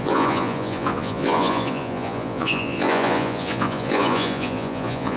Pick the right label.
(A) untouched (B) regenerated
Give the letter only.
B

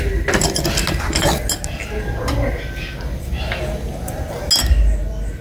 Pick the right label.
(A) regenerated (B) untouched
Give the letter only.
B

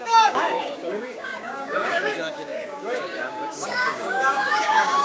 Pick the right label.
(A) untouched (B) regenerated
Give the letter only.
B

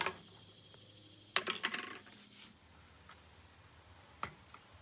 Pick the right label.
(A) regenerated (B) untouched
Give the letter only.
B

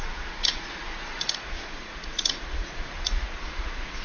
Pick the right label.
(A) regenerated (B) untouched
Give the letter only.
A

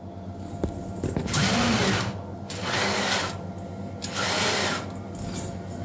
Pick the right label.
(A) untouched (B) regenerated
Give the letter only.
A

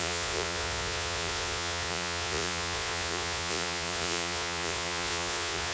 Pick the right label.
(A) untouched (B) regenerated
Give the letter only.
B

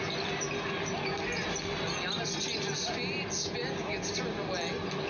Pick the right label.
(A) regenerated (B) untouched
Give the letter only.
B